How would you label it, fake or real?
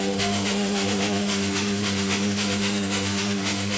fake